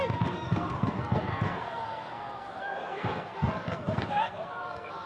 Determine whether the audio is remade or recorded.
remade